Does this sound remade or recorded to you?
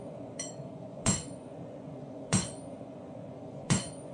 remade